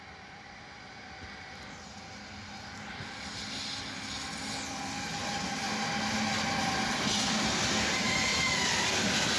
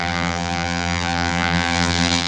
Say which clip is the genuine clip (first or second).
first